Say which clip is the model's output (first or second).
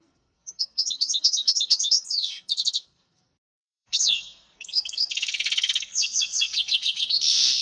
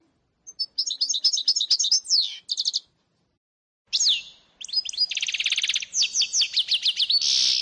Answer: first